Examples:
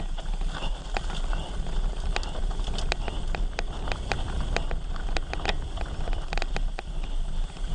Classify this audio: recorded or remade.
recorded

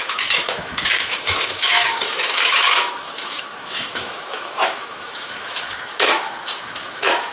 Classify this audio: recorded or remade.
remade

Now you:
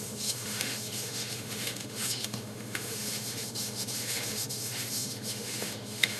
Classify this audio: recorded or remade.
remade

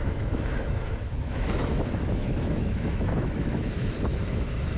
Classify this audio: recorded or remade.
remade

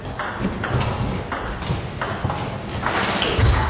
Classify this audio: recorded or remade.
recorded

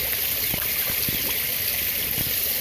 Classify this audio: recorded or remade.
recorded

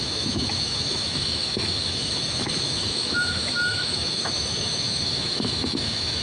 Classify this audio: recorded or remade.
remade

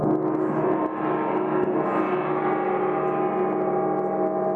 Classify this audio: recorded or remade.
recorded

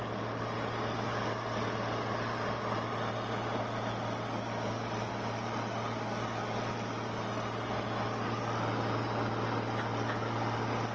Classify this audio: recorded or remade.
recorded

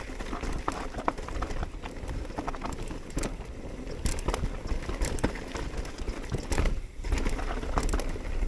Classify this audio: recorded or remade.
recorded